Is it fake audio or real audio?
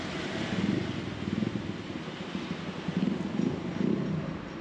real